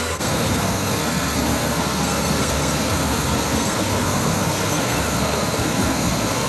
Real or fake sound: fake